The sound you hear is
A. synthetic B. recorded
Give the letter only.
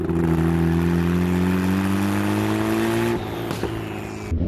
B